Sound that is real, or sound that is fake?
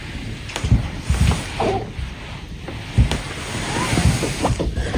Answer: real